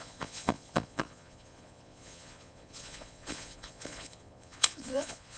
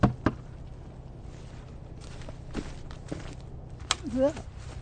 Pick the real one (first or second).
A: second